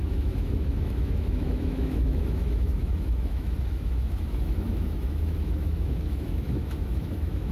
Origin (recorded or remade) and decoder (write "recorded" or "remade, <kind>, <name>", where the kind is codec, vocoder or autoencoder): remade, autoencoder, DAC-VAE